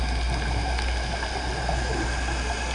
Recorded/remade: recorded